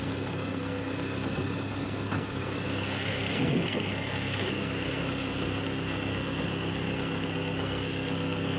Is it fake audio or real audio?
fake